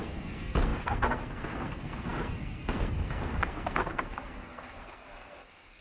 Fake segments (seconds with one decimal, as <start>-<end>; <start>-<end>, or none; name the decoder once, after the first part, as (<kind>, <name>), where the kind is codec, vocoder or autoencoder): 0.0-5.8 (codec, SNAC)